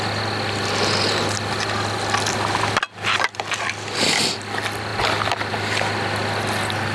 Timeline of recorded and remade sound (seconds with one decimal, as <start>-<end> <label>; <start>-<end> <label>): 0.0-6.9 recorded